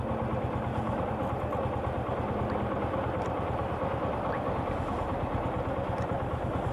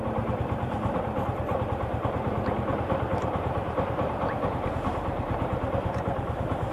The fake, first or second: second